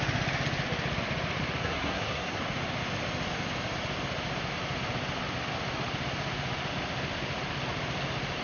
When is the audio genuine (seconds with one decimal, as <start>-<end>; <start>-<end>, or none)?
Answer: 0.0-1.6; 2.4-8.4